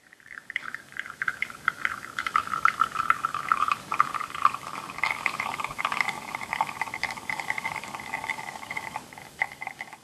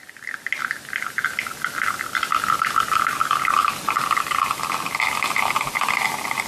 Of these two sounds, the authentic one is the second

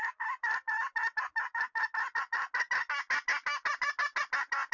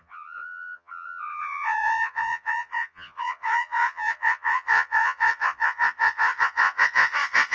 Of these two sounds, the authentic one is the first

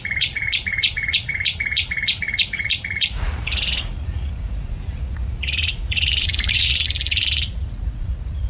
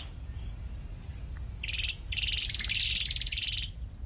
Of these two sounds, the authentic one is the second